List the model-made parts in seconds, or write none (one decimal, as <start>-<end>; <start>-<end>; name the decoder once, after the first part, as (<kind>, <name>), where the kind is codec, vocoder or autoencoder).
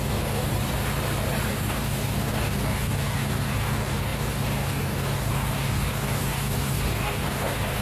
0.0-0.5 (codec, DAC); 1.5-7.8